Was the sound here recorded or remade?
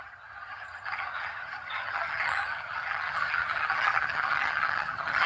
remade